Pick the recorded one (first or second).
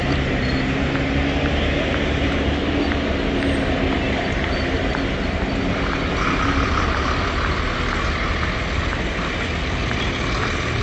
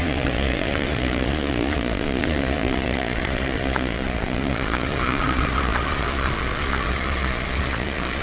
first